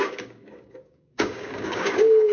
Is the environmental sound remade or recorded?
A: remade